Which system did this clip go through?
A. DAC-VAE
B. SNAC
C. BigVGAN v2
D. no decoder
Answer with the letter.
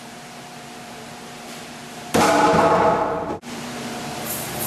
C